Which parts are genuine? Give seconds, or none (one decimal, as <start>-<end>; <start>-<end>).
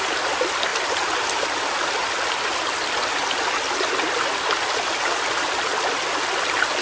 0.0-6.8